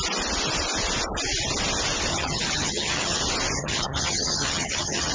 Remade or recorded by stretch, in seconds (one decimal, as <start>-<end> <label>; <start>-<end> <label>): 0.0-2.1 recorded; 2.1-3.2 remade; 3.2-3.6 recorded; 3.6-5.1 remade